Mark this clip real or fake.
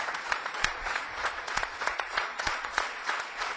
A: fake